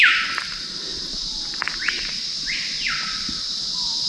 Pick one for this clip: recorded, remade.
remade